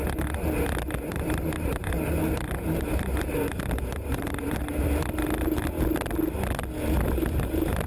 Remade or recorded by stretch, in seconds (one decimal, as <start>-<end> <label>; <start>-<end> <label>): 0.0-1.1 recorded; 1.1-4.8 remade; 4.8-7.9 recorded